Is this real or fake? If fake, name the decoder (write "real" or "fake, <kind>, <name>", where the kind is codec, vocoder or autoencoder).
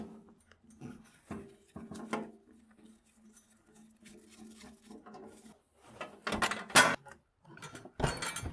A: real